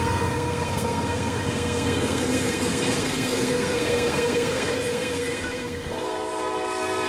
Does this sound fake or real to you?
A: fake